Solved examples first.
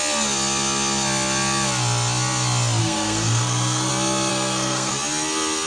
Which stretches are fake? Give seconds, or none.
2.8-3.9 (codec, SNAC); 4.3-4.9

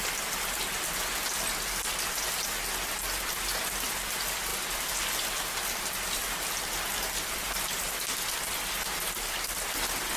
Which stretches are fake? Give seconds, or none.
none

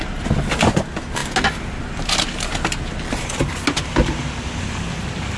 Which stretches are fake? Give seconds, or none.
none

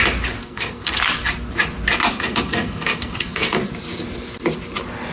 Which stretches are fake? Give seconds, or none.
0.4-1.0 (codec, SNAC); 2.1-3.6